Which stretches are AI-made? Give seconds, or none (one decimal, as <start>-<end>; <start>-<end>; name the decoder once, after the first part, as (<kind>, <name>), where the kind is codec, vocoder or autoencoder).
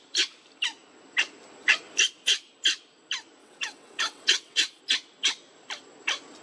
3.4-4.8 (vocoder, WaveNeXt)